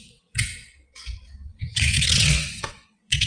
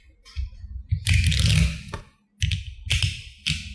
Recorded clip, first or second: second